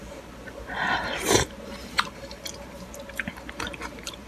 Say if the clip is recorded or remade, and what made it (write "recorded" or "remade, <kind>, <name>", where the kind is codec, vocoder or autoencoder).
remade, vocoder, BigVGAN v2